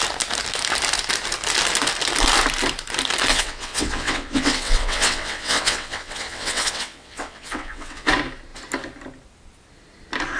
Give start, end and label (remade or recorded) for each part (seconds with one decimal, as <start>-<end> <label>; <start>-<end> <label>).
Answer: 0.0-3.3 recorded; 3.3-8.1 remade; 8.1-10.4 recorded

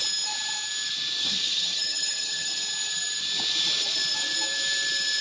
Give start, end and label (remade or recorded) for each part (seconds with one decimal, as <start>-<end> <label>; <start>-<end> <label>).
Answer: 0.0-1.2 recorded; 1.2-2.5 remade; 2.5-5.2 recorded

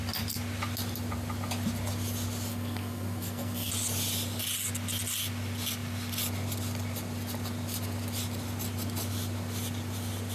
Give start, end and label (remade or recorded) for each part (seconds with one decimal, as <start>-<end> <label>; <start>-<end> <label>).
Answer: 0.0-2.5 recorded; 2.5-3.7 remade; 3.7-10.3 recorded

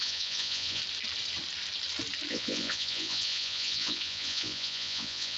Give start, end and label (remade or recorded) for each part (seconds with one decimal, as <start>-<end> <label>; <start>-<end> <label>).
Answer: 0.0-0.8 remade; 0.8-2.3 recorded; 2.3-5.4 remade

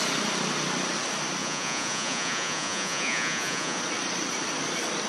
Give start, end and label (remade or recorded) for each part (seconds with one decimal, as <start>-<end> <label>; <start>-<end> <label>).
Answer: 0.0-1.4 recorded; 1.4-3.8 remade; 3.8-5.1 recorded

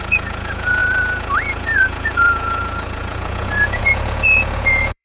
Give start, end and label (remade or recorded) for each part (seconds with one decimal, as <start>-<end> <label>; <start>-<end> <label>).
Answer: 0.0-5.0 remade